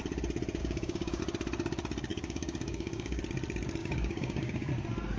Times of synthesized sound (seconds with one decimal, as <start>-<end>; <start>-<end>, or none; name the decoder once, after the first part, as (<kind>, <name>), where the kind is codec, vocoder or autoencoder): 0.6-1.2 (codec, DAC); 2.1-3.2; 3.8-4.7